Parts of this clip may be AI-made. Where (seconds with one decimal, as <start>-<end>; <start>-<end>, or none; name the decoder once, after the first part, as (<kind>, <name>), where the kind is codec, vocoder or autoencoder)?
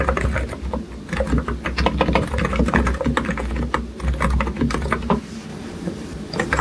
5.5-6.6 (vocoder, BigVGAN v2)